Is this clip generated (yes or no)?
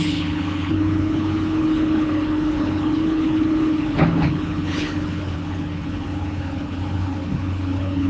yes